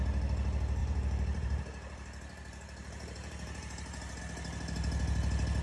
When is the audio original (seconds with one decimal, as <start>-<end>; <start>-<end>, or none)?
0.0-0.8; 4.2-5.6